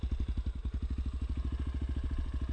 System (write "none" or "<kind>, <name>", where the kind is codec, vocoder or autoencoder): none